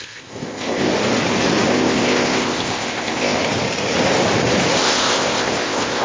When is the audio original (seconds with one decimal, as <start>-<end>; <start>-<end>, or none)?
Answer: 0.9-1.7; 3.4-4.8

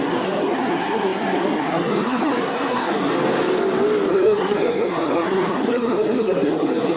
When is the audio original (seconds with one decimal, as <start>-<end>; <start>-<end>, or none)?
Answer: 3.1-4.1